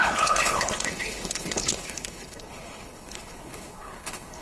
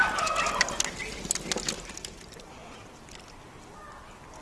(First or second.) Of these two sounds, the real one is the second